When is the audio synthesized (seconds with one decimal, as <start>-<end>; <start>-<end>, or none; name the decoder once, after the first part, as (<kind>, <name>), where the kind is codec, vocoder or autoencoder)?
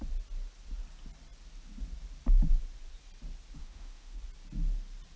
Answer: 3.6-4.2 (autoencoder, DAC-VAE)